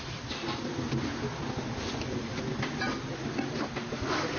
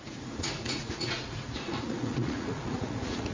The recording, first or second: first